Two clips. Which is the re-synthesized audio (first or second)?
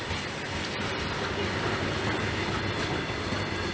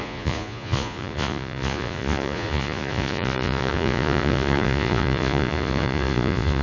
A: second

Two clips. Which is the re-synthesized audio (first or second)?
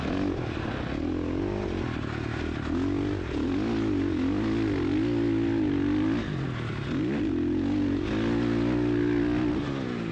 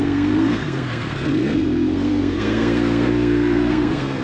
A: second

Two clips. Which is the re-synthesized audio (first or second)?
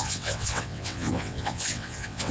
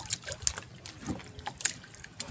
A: first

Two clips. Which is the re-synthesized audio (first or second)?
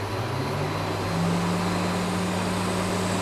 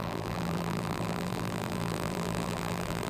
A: second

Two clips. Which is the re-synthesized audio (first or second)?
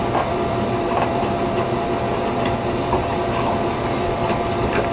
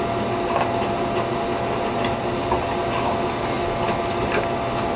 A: first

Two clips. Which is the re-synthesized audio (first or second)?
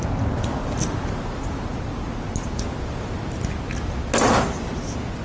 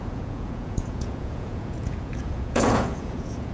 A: second